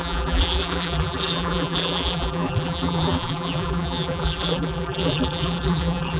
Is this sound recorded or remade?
remade